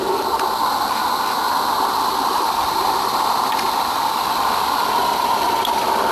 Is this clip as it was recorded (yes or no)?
yes